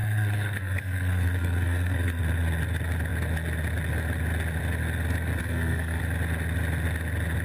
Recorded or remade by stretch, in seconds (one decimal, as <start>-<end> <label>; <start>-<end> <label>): 0.0-2.2 remade; 2.2-5.4 recorded; 5.4-6.0 remade; 6.0-7.4 recorded